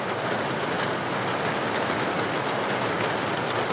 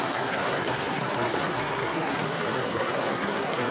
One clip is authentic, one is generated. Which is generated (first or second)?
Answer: second